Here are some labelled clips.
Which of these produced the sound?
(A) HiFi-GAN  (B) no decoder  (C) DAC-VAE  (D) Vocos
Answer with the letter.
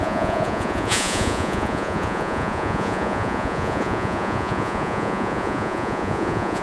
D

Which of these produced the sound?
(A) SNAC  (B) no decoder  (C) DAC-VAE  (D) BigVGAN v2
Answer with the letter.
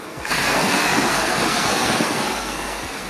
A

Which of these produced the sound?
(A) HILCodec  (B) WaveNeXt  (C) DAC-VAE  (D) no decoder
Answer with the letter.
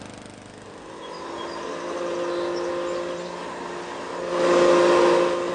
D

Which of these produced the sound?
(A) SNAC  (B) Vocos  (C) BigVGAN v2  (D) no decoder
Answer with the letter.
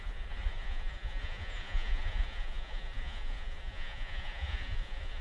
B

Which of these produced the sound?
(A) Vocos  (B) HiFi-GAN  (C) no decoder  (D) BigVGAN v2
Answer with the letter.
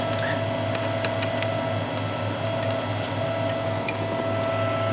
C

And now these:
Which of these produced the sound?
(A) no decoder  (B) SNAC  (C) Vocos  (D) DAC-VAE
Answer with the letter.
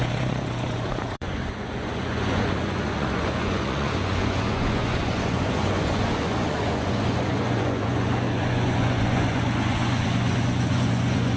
C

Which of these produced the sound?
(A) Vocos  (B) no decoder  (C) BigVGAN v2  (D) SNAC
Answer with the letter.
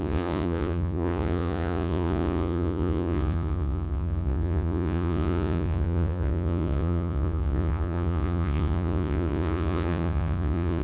A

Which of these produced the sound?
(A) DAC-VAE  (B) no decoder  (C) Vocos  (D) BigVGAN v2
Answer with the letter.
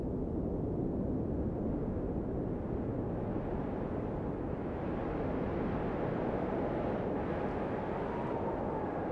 B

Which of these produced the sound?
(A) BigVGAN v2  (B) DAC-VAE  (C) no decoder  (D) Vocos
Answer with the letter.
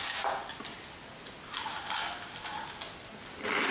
C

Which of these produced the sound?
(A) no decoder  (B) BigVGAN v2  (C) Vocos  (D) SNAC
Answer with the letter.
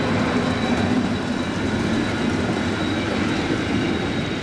A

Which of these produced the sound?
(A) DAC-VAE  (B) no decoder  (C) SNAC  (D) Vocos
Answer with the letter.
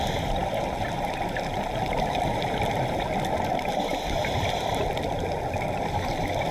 B